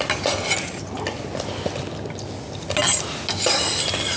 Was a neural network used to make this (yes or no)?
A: no